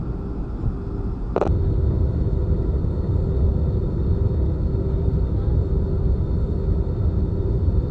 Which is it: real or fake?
real